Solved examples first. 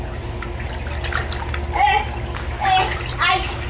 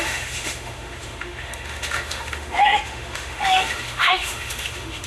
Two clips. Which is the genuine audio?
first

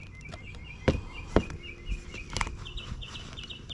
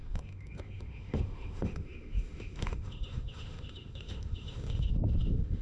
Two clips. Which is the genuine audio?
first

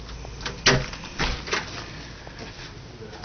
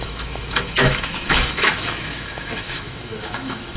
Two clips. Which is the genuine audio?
first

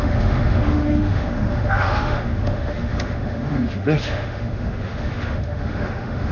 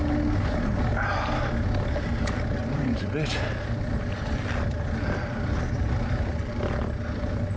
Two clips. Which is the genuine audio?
second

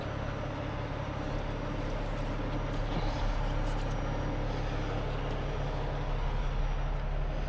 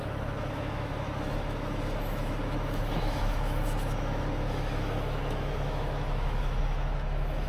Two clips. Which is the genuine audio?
first